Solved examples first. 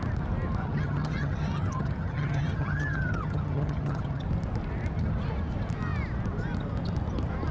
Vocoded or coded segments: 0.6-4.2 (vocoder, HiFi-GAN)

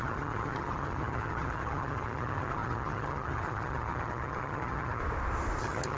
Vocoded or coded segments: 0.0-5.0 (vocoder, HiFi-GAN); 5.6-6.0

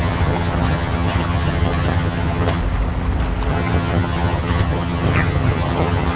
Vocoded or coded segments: 0.0-2.6 (vocoder, HiFi-GAN); 3.5-6.2